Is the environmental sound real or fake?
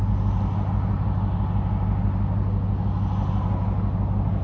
real